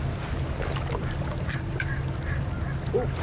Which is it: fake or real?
real